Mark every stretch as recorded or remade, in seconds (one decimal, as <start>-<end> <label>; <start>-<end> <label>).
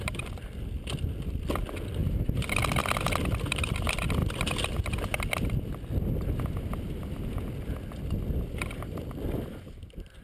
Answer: 0.0-10.2 recorded